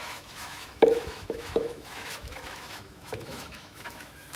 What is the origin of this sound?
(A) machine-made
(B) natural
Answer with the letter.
A